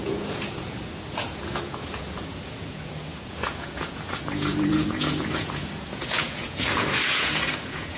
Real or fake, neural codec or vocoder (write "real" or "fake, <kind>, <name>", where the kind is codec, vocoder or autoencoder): fake, vocoder, Vocos